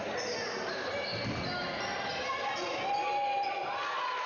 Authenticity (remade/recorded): recorded